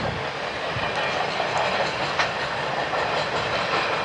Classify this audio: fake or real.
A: real